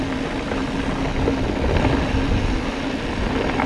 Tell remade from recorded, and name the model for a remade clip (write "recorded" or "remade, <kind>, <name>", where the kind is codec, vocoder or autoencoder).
recorded